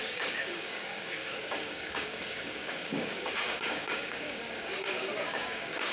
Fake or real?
fake